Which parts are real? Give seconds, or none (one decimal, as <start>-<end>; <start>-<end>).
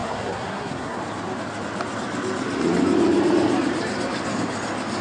1.0-5.0